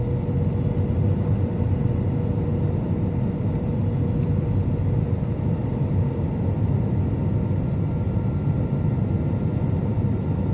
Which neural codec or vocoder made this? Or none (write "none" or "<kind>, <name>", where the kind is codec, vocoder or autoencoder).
none